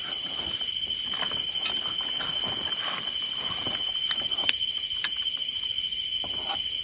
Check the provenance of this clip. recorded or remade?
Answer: recorded